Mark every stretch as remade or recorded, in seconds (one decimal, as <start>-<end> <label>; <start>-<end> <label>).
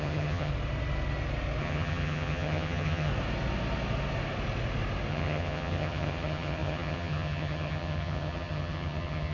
0.0-0.5 remade; 0.5-1.6 recorded; 1.6-3.1 remade; 3.1-5.1 recorded; 5.1-9.3 remade